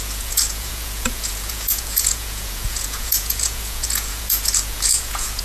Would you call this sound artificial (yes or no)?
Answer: yes